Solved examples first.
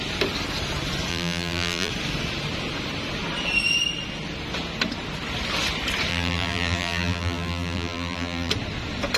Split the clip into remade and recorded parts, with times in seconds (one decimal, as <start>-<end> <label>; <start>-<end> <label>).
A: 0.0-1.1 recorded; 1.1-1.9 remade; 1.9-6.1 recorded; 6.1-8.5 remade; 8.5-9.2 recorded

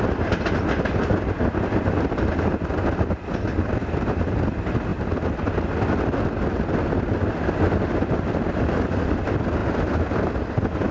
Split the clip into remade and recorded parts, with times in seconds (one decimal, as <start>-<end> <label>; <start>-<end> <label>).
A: 0.0-10.9 recorded

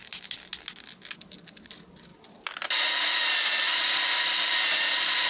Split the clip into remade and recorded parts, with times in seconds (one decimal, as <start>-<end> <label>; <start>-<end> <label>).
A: 0.0-5.3 recorded

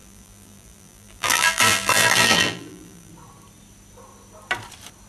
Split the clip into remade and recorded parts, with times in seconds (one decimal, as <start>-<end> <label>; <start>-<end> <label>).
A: 0.0-3.1 remade; 3.1-5.1 recorded

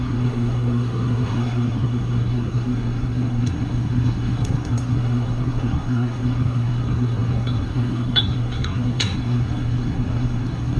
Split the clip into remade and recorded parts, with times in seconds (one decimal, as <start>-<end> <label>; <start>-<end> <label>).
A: 0.0-10.8 remade